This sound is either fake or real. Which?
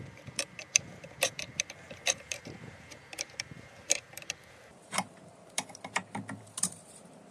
fake